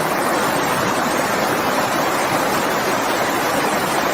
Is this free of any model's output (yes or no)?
no